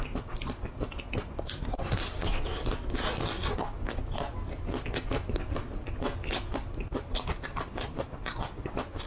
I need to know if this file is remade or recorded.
recorded